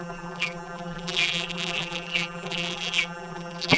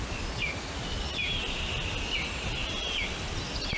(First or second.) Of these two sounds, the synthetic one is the first